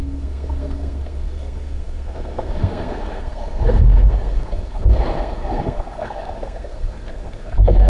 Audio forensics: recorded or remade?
remade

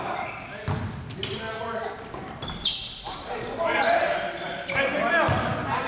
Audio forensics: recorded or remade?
recorded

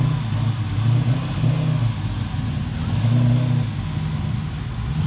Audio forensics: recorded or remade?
recorded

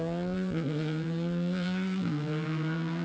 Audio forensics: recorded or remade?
remade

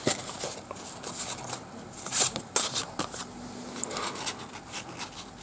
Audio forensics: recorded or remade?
recorded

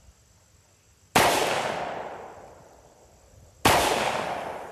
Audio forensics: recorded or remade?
recorded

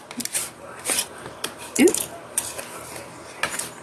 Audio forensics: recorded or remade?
recorded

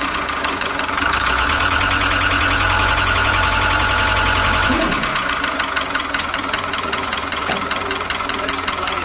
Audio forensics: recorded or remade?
remade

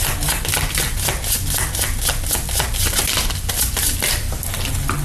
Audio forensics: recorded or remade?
recorded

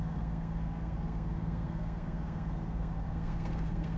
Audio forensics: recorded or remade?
remade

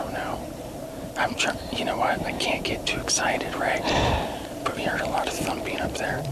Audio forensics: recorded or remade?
remade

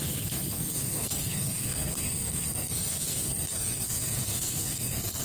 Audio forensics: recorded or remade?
remade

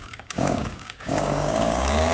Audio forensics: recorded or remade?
remade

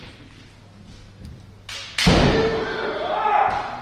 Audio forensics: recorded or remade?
recorded